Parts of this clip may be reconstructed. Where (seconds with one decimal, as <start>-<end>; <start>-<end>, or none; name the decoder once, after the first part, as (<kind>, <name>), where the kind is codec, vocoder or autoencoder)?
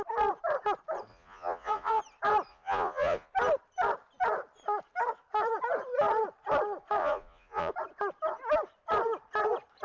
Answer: 1.1-2.0 (vocoder, Vocos); 2.5-3.3; 7.0-7.7